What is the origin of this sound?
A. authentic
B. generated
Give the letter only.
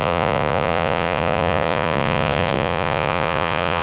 B